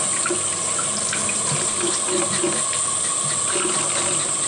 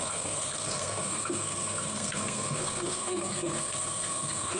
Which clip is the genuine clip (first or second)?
first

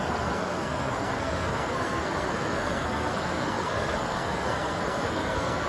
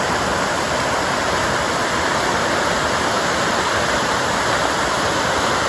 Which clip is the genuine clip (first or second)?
second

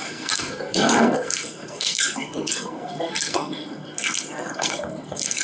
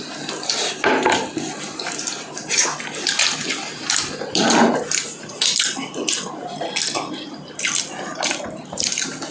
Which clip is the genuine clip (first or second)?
second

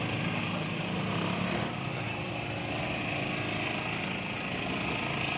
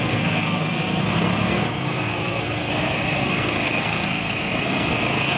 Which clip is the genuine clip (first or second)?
first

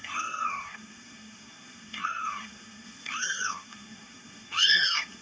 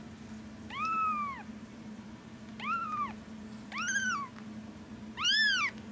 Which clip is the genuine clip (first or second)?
second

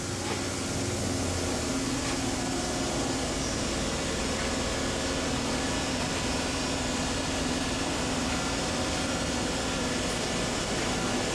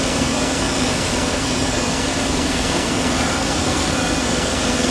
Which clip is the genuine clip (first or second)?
first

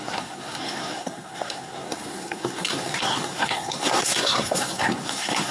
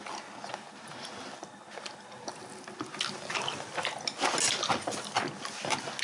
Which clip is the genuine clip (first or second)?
second